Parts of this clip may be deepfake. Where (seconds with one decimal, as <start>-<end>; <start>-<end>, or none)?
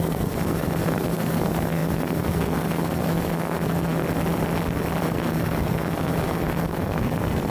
0.0-4.0; 5.0-7.5